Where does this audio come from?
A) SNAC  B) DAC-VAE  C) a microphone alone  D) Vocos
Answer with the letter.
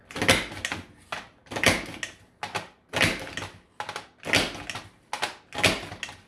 C